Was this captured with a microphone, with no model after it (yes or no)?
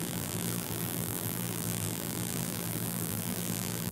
no